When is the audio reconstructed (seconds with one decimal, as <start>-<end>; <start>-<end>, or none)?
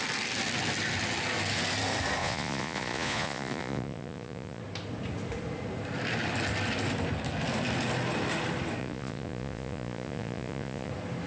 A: 2.2-4.6; 8.8-10.9